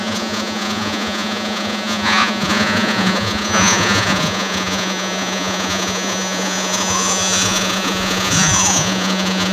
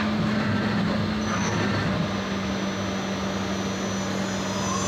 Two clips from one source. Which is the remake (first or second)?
first